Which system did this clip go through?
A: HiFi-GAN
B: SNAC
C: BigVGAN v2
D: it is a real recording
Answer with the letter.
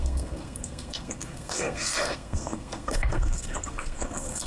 B